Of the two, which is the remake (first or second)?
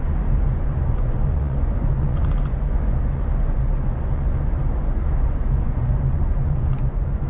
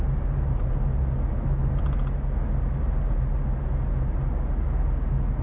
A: first